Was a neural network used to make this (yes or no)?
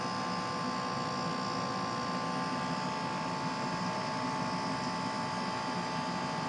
no